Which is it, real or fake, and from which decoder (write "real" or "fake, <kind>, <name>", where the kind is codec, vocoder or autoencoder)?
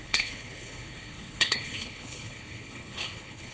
fake, codec, HILCodec